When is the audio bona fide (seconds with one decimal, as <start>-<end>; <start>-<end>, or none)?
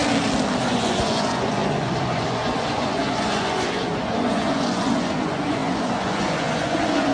0.0-0.7